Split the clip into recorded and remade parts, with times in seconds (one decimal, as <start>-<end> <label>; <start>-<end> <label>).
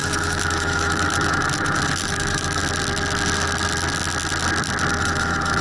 0.0-2.6 remade; 2.6-5.0 recorded; 5.0-5.6 remade